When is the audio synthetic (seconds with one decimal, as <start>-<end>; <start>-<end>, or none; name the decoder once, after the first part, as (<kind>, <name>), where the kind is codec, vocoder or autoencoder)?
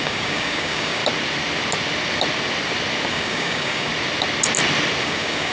0.0-1.0 (codec, DAC); 3.1-3.9; 5.0-5.5